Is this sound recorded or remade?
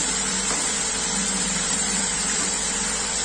remade